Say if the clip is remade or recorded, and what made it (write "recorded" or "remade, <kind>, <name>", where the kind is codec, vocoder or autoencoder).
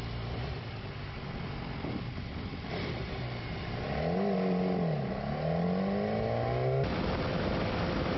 recorded